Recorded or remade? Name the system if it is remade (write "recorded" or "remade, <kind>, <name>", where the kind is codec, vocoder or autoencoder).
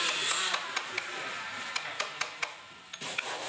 recorded